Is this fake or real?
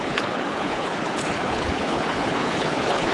fake